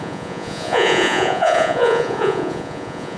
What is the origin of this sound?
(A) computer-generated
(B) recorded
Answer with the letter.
A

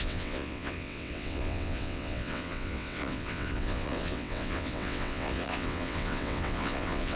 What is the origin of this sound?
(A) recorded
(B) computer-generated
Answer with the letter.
B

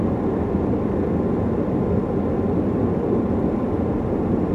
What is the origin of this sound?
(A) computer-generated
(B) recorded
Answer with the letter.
B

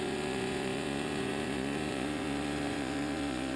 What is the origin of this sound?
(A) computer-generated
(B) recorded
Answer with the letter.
A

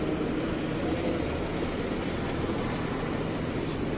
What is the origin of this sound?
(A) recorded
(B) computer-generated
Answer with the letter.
A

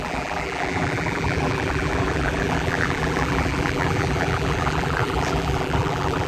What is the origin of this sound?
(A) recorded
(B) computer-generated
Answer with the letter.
B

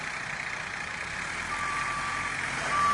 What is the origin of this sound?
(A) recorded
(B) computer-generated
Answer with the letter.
B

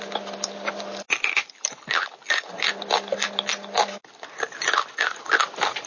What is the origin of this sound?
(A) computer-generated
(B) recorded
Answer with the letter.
B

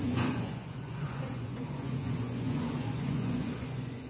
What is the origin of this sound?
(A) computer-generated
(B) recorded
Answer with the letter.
A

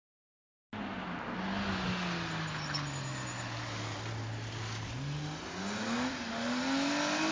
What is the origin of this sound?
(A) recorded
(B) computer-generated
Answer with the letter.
A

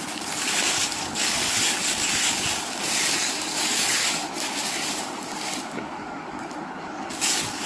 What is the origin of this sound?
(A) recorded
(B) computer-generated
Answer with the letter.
B